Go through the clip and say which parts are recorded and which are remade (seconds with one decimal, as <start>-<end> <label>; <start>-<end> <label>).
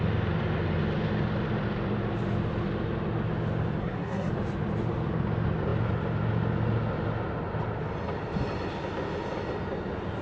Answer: 0.0-3.8 recorded; 3.8-4.3 remade; 4.3-10.2 recorded